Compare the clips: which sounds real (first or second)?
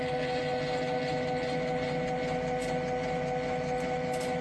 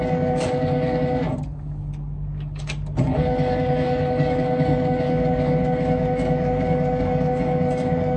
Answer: first